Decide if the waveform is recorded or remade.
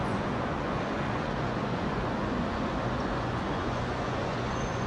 remade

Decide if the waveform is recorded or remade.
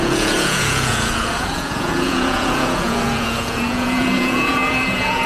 remade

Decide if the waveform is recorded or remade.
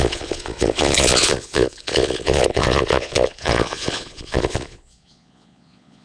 remade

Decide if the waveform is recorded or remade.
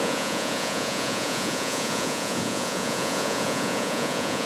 remade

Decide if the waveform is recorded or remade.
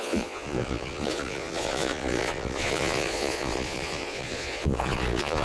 remade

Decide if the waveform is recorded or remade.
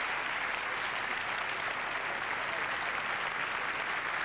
recorded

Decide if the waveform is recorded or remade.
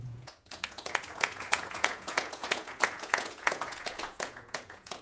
remade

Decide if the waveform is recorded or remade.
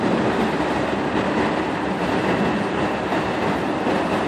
recorded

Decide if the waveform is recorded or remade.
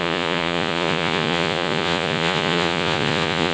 remade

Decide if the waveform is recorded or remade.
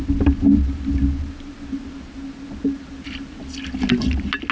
recorded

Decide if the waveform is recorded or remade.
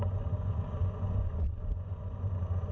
remade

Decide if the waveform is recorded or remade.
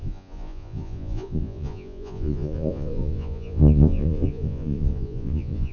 remade